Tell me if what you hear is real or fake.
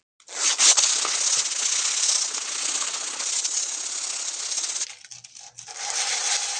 real